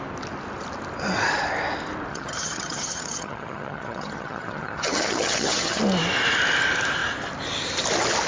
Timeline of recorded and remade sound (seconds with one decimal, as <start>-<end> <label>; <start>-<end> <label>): 0.0-2.1 recorded; 2.1-5.8 remade; 5.8-8.3 recorded

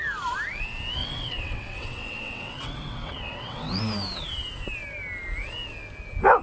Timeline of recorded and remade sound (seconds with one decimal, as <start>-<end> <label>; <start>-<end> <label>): 0.0-1.0 recorded; 1.0-3.8 remade; 3.8-6.4 recorded

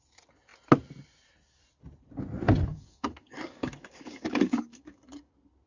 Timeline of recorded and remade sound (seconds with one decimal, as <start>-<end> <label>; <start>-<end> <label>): 0.0-2.7 recorded; 2.7-5.3 remade; 5.3-5.7 recorded

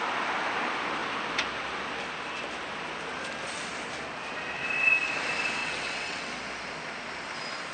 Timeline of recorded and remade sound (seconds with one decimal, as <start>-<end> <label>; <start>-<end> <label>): 0.0-5.6 recorded; 5.6-6.3 remade; 6.3-7.7 recorded